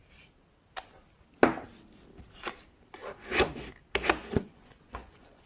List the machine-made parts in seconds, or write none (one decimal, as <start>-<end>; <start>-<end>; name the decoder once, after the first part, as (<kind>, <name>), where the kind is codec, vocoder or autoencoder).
3.0-3.5 (vocoder, Vocos); 4.2-5.5

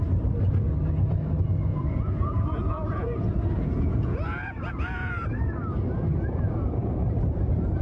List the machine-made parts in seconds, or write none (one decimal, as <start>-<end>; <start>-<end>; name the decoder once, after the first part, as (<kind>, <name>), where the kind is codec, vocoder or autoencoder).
1.7-5.1 (vocoder, Vocos)

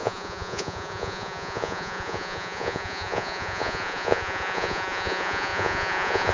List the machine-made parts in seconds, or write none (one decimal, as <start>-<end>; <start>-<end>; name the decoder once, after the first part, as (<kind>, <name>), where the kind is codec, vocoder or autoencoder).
0.0-6.3 (vocoder, Vocos)

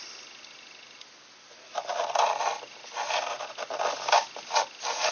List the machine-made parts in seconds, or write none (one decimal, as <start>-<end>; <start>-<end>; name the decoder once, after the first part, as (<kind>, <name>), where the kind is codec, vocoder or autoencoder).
none